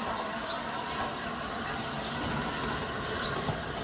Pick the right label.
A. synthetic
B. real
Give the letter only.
B